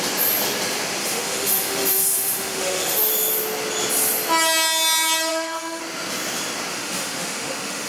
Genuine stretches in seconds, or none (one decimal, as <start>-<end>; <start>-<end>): 0.0-1.0; 3.1-5.3; 5.8-6.7